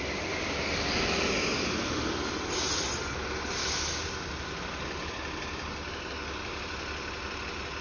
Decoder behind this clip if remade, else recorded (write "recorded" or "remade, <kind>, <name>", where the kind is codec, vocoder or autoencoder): recorded